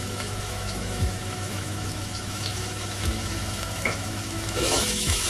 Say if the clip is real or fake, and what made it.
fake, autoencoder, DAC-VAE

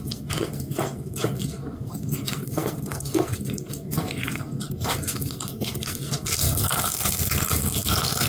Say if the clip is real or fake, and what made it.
fake, codec, SNAC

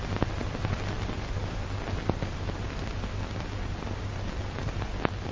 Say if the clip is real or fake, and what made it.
real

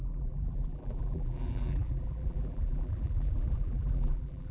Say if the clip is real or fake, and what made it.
fake, vocoder, BigVGAN v2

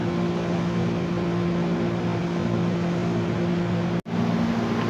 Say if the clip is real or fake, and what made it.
real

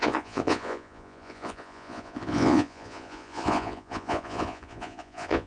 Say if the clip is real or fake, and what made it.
fake, vocoder, Vocos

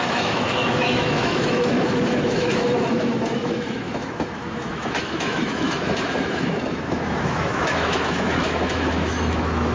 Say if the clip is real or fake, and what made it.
fake, autoencoder, DAC-VAE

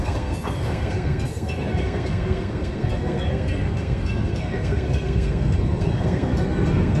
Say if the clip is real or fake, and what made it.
fake, codec, SNAC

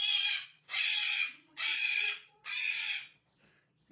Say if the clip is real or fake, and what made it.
fake, vocoder, Vocos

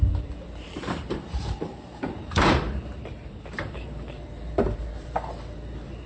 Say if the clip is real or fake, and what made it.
fake, vocoder, BigVGAN v2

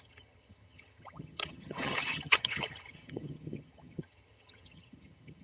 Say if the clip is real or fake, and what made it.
fake, vocoder, HiFi-GAN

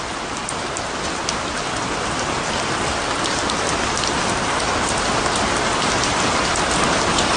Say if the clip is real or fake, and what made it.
real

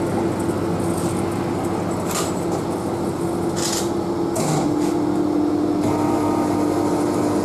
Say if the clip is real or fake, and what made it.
real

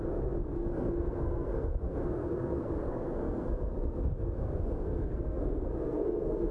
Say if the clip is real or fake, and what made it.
fake, codec, SNAC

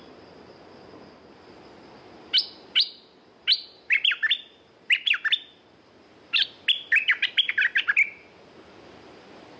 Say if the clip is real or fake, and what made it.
real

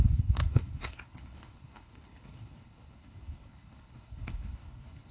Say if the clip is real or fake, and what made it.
fake, codec, HILCodec